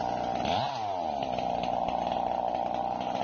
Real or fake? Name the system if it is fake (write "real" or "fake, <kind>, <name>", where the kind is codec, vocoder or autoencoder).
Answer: real